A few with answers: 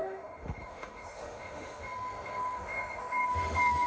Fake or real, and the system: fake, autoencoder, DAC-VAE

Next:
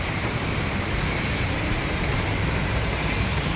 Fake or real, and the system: fake, vocoder, BigVGAN v2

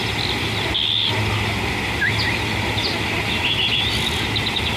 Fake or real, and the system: real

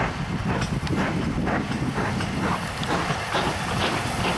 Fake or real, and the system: real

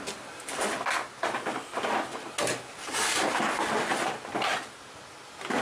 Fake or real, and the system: real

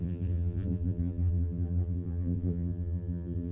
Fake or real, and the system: fake, vocoder, BigVGAN v2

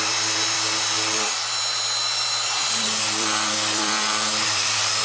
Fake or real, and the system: fake, vocoder, BigVGAN v2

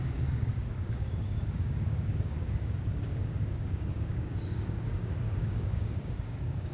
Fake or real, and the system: fake, codec, DAC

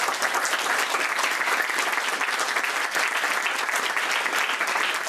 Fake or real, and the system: real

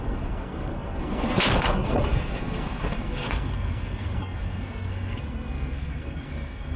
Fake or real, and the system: fake, codec, SNAC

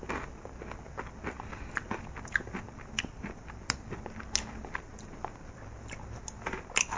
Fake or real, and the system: real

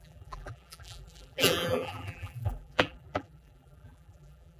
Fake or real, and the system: fake, vocoder, BigVGAN v2